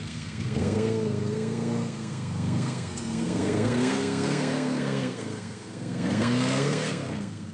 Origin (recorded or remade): remade